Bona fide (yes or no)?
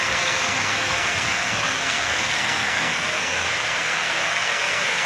no